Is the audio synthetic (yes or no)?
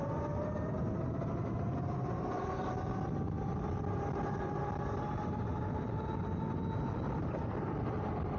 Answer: no